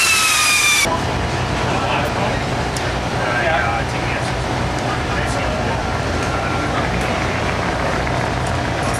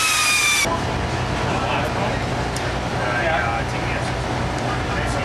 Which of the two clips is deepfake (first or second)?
first